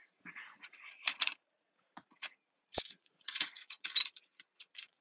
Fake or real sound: fake